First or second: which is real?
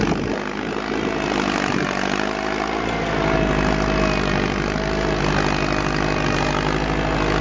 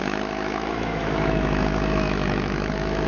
first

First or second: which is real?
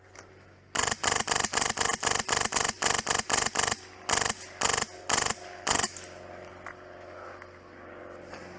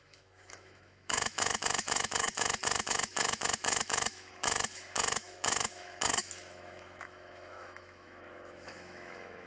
first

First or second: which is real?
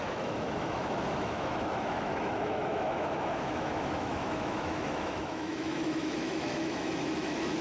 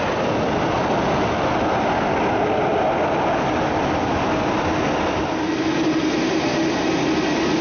second